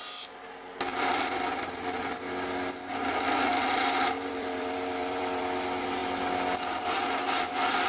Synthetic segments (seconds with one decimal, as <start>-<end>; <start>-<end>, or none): 0.9-2.1; 3.5-5.4